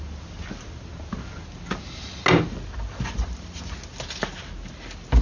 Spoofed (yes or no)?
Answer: no